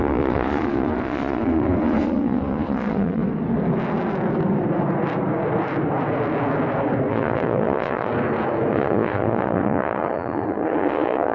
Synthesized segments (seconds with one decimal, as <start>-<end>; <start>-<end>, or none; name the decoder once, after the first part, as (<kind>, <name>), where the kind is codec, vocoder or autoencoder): 0.0-3.2 (vocoder, Vocos); 7.1-8.1; 8.7-11.3